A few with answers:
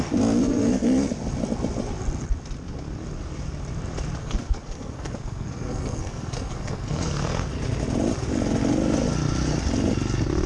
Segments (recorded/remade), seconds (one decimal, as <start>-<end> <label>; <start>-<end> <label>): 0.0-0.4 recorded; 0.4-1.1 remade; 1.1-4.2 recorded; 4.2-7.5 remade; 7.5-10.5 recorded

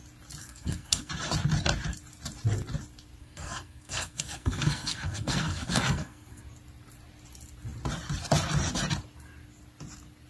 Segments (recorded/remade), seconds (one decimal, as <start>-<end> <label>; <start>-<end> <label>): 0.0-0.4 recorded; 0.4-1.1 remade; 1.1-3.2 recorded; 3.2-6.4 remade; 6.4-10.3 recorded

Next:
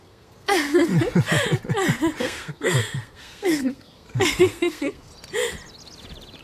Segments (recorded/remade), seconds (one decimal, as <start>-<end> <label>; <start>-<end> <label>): 0.0-0.9 remade; 0.9-2.2 recorded; 2.2-5.1 remade; 5.1-6.4 recorded

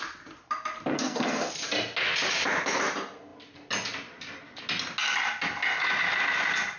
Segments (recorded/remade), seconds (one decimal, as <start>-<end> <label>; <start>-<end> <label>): 0.0-0.9 recorded; 0.9-1.5 remade; 1.5-6.8 recorded